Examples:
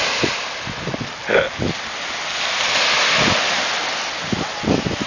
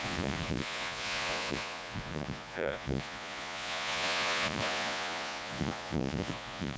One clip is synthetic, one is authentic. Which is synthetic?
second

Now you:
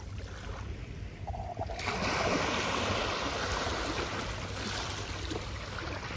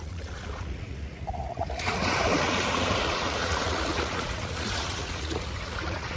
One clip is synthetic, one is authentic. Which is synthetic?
second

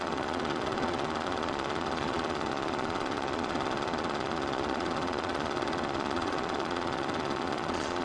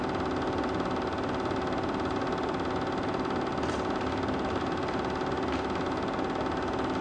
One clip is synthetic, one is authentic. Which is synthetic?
first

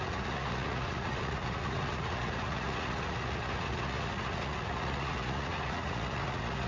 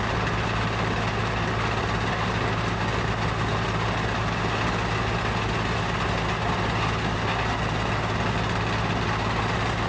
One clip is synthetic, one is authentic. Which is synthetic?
first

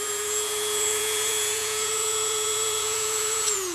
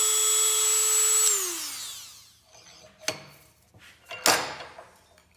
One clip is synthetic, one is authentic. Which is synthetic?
first